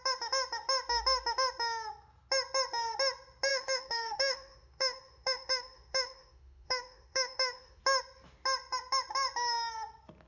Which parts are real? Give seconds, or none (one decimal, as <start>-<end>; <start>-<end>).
0.0-3.5; 7.8-10.3